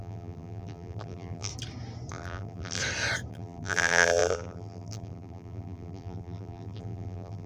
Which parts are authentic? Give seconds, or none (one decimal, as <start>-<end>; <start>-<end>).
1.5-2.1; 2.8-3.3